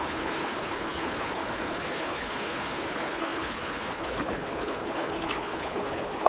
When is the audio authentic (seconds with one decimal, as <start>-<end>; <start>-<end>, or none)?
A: none